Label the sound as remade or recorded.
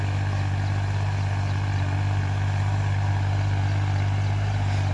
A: recorded